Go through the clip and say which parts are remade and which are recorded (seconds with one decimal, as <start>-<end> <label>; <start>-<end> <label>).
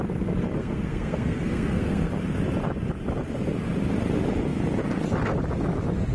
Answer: 0.0-0.6 recorded; 0.6-2.1 remade; 2.1-6.1 recorded